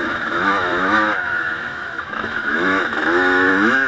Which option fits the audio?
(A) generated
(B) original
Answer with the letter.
A